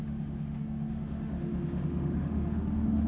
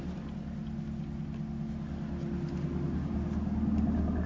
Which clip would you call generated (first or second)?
first